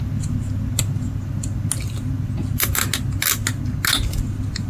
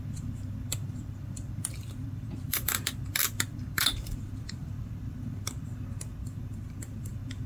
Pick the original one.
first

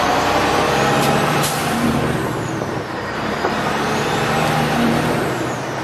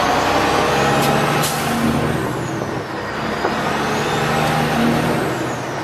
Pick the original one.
second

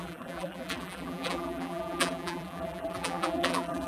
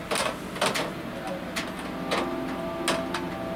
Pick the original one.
second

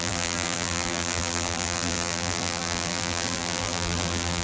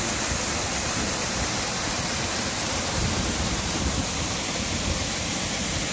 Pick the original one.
second